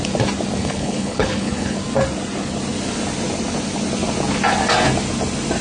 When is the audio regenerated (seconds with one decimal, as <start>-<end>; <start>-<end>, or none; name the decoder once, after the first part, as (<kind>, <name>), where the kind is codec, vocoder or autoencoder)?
0.6-1.8 (codec, HILCodec)

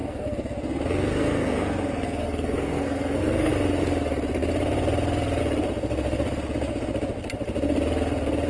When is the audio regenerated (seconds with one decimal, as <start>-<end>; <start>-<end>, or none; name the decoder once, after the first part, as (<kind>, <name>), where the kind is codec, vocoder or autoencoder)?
0.0-3.5 (codec, SNAC)

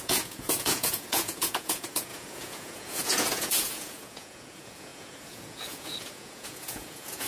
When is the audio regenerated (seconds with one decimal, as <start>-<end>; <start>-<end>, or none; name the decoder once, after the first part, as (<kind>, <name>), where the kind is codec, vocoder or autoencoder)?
0.0-7.3 (vocoder, Vocos)